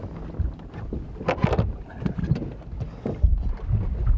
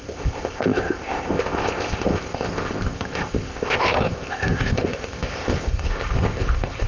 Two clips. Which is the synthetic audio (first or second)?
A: second